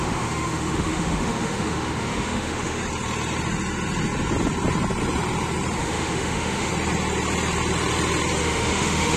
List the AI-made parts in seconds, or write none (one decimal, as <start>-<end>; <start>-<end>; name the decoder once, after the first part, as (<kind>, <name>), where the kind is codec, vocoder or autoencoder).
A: 0.0-2.8 (autoencoder, DAC-VAE); 5.8-6.7; 8.4-9.2

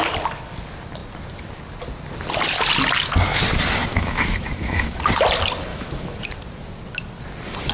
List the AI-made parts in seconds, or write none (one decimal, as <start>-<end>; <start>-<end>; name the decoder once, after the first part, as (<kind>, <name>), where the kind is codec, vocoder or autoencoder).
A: 3.9-5.0 (autoencoder, DAC-VAE); 5.7-6.2